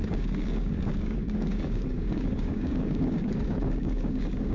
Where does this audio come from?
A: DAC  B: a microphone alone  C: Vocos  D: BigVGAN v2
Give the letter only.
A